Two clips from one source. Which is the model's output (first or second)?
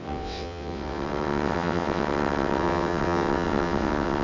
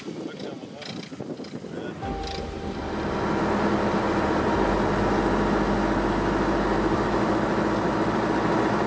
first